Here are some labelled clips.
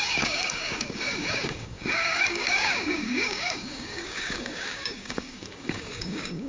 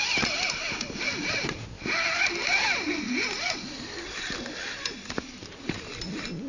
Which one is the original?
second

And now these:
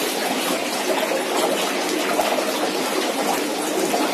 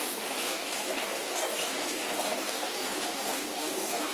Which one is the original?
first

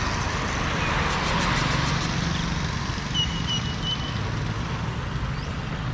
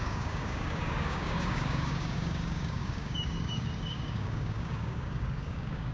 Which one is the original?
first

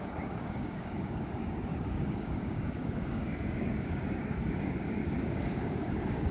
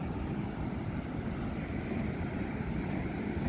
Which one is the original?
second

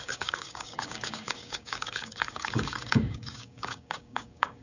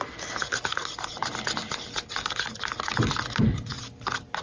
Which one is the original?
second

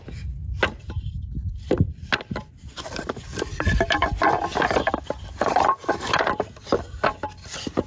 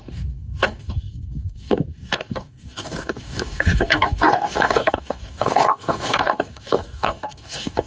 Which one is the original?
first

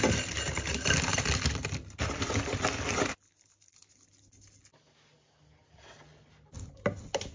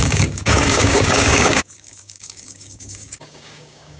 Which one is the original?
first